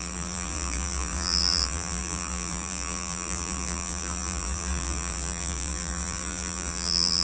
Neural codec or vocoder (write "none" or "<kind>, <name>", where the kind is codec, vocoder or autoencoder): vocoder, BigVGAN v2